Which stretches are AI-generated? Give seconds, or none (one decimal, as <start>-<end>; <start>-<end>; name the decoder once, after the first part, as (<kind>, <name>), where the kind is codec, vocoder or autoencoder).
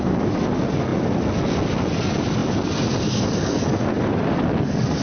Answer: none